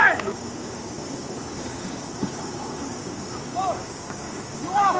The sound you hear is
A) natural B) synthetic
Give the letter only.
B